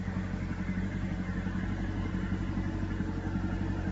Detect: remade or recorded remade